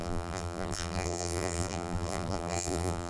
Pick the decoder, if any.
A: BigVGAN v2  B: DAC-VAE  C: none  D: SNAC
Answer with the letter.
A